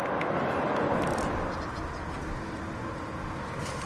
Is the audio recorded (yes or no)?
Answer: yes